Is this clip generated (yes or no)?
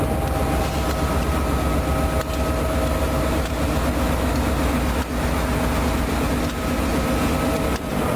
no